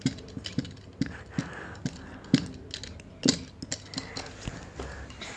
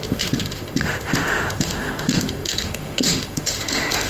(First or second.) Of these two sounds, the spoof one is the second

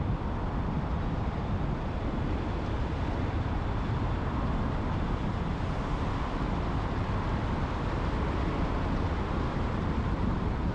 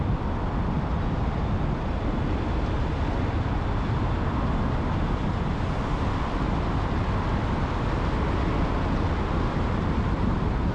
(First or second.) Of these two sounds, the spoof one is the first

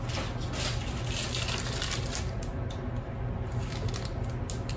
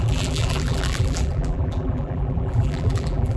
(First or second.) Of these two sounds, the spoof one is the second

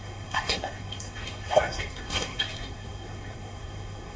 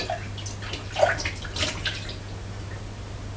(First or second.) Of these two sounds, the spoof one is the first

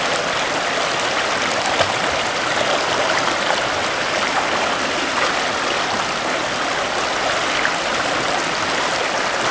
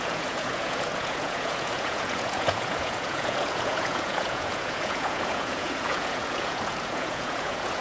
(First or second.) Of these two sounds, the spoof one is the second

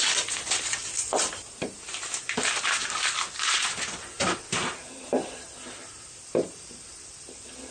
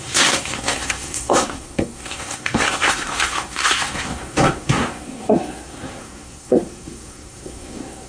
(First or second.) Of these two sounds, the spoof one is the second